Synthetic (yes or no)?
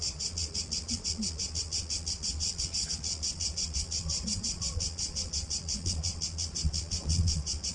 yes